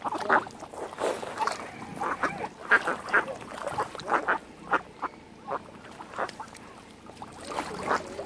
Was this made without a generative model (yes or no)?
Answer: yes